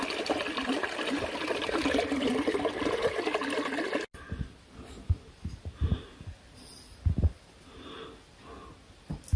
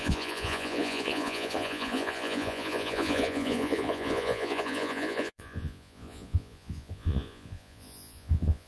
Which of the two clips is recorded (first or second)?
first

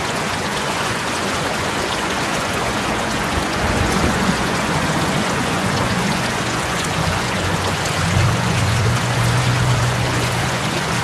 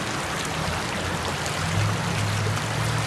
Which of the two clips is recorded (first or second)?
second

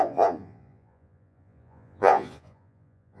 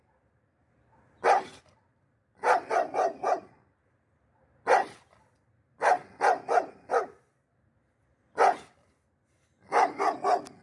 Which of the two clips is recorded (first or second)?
second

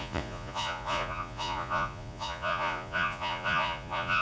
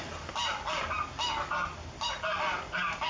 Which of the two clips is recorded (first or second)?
second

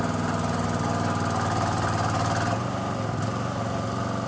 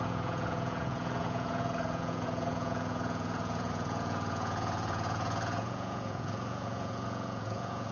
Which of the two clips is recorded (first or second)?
first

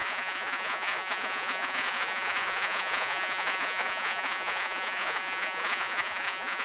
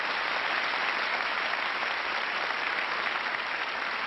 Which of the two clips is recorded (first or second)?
second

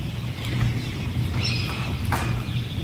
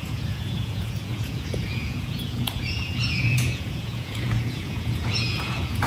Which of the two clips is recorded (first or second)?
first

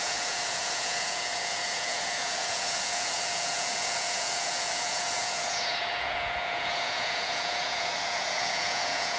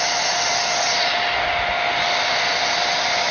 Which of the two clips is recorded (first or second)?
second